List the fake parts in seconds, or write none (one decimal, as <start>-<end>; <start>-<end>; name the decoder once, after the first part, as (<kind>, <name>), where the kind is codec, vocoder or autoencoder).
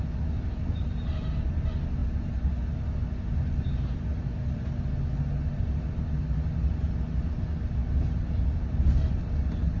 none